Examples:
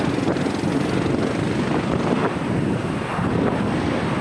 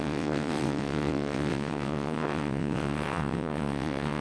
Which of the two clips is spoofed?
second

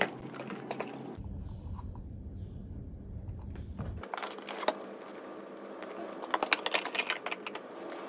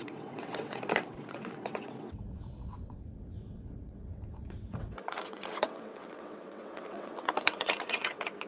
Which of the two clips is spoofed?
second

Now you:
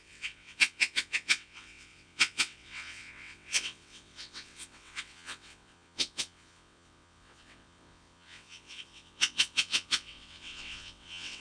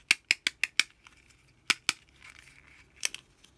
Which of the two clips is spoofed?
first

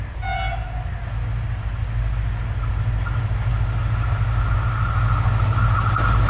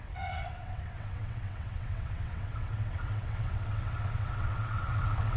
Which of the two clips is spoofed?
second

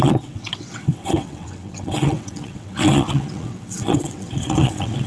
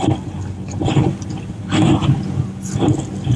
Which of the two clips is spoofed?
first